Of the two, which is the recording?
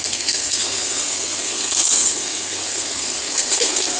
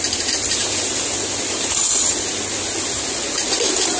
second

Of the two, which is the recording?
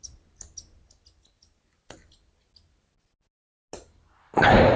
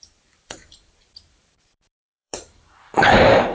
first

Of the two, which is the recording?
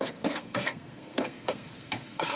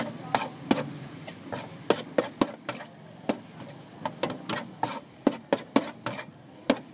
second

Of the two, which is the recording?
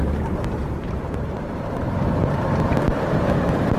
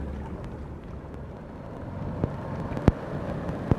second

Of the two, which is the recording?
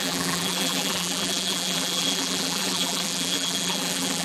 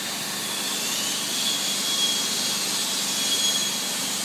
second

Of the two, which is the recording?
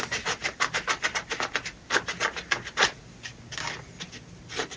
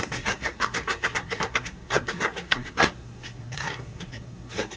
first